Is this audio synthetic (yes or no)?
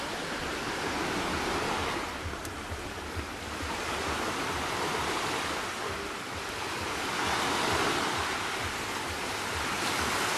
no